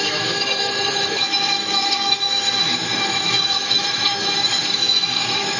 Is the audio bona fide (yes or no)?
no